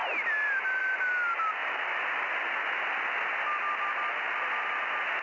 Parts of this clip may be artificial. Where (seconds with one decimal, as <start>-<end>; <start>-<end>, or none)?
0.0-0.8; 1.6-4.7